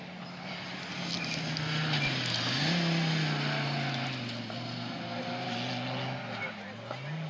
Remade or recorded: recorded